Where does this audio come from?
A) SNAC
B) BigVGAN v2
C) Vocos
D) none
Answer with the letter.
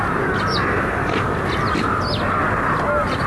D